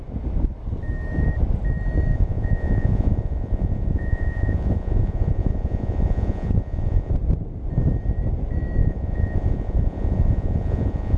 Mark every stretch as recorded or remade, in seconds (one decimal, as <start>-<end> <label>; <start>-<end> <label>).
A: 0.0-2.1 recorded; 2.1-7.1 remade; 7.1-8.8 recorded; 8.8-11.2 remade